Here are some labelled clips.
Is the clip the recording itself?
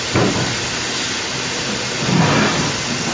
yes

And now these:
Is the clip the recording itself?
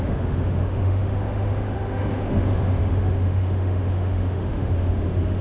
no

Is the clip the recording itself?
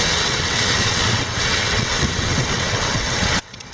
no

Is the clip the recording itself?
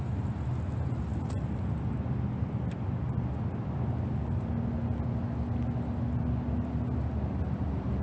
yes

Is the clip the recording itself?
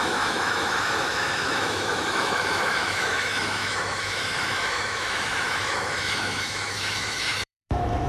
no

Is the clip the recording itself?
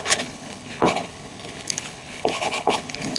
no